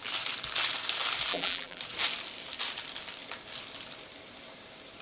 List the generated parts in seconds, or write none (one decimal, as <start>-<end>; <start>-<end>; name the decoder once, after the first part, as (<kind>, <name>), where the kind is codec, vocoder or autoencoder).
1.3-1.8 (vocoder, BigVGAN v2)